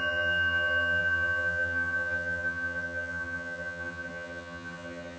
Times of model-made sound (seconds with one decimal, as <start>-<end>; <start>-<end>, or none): 0.0-5.2